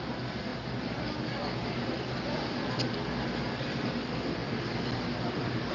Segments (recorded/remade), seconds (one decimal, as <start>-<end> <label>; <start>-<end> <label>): 0.0-5.7 recorded